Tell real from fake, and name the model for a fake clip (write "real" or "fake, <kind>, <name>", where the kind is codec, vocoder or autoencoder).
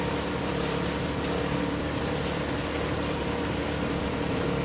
fake, vocoder, BigVGAN v2